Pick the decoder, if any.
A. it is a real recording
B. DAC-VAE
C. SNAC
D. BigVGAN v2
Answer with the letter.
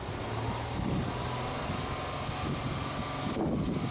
A